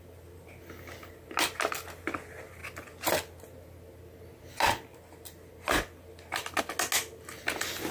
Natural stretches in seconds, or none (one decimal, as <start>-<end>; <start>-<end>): 0.0-7.9